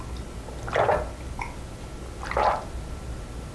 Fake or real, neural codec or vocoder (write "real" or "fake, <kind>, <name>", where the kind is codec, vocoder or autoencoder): real